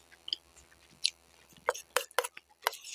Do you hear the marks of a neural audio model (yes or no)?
no